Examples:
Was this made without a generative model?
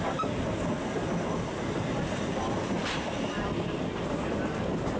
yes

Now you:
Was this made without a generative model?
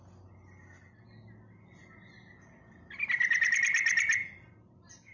yes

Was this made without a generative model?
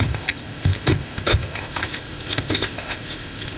no